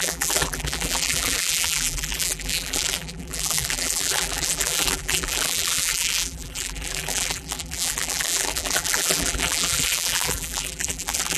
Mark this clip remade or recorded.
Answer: remade